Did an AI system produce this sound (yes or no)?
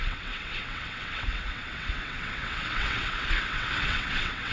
yes